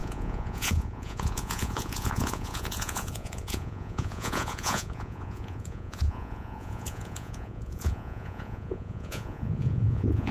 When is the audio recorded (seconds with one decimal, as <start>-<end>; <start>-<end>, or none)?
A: none

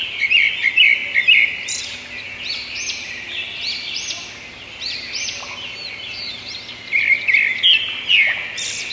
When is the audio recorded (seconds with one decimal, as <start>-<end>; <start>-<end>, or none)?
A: 0.0-8.9

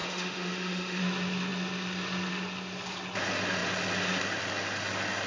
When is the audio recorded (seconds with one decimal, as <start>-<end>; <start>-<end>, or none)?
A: 1.0-5.3

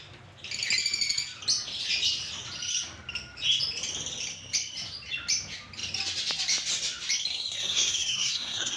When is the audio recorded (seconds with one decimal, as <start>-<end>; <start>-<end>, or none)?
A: 0.0-7.3

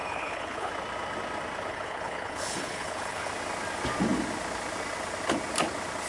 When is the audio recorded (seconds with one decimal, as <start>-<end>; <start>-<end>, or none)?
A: 0.7-1.7; 3.3-6.1

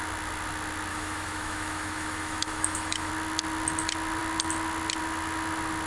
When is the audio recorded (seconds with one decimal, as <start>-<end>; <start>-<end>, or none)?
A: 0.0-0.9; 3.1-5.9